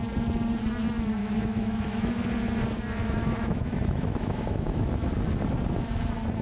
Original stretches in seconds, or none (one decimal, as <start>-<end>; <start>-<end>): 0.0-1.2; 2.1-3.0; 4.9-6.4